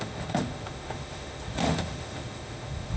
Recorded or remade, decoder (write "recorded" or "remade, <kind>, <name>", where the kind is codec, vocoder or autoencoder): remade, autoencoder, DAC-VAE